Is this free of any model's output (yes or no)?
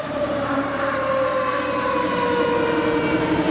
no